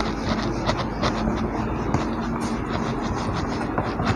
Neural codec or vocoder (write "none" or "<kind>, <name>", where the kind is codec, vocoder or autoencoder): none